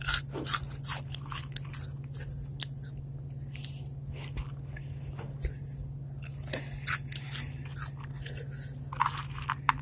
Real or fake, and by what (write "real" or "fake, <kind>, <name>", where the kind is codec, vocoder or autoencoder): real